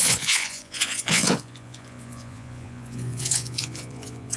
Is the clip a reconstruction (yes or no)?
yes